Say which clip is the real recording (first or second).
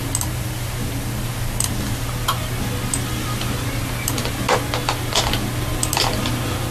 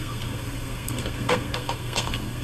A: first